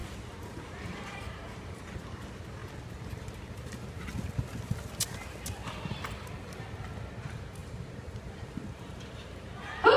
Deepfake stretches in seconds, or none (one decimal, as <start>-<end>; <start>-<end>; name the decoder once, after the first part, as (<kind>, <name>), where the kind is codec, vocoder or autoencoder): 0.0-1.9 (vocoder, BigVGAN v2); 7.6-9.6